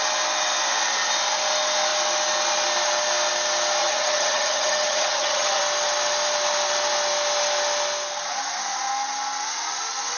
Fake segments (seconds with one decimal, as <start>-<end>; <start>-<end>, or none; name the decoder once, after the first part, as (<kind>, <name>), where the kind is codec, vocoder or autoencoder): 3.8-5.6 (vocoder, HiFi-GAN)